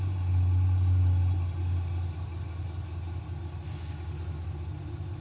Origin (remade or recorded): recorded